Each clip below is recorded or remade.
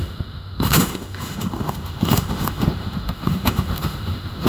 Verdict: remade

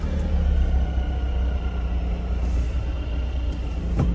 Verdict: recorded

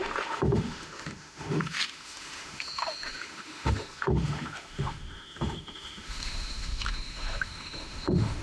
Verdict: remade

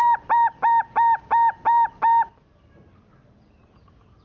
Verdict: recorded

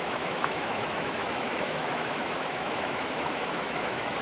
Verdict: remade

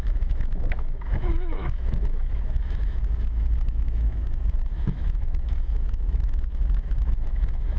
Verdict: remade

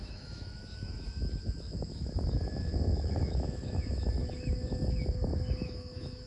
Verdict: remade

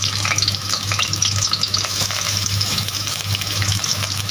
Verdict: remade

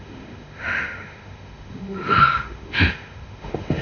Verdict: remade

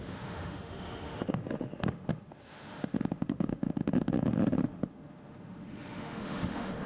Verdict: remade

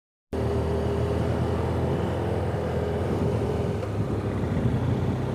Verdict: recorded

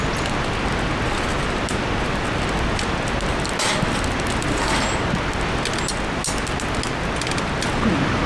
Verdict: recorded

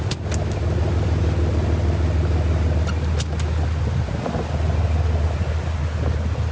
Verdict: recorded